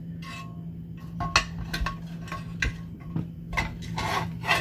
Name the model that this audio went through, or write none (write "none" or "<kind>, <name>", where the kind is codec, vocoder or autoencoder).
none